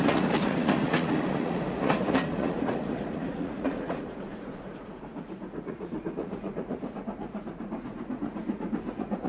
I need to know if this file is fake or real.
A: fake